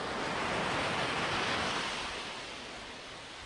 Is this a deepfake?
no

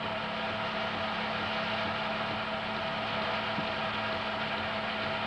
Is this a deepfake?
no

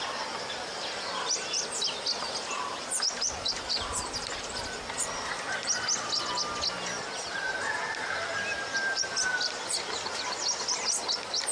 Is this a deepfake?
no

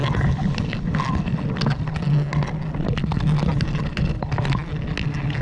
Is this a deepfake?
no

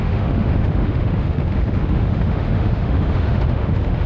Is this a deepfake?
yes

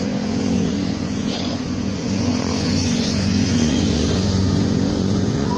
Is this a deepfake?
yes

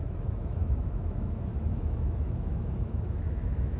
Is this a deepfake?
yes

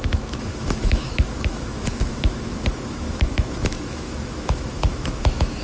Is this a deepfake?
yes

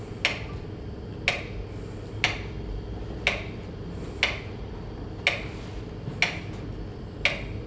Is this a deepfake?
no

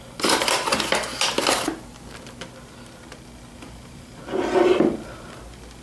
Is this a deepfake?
no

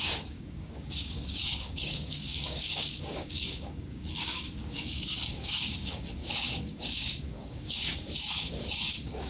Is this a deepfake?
yes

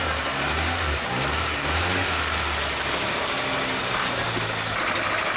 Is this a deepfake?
no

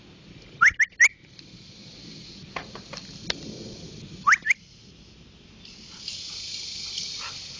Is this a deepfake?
no